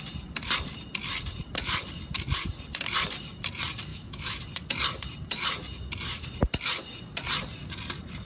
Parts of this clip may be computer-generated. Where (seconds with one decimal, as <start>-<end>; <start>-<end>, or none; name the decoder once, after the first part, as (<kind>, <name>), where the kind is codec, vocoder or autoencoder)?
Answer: 3.9-4.4 (autoencoder, DAC-VAE)